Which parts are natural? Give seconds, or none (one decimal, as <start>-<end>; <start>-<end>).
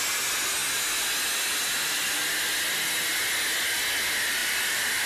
0.0-4.4